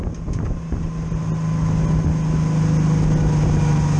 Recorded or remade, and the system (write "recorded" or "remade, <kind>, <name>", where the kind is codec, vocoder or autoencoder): recorded